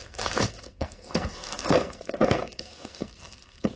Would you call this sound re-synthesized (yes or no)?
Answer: yes